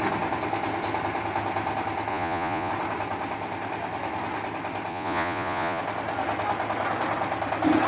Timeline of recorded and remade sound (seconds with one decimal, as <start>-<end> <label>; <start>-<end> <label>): 0.0-2.1 recorded; 2.1-2.7 remade; 2.7-4.9 recorded; 4.9-5.8 remade; 5.8-7.9 recorded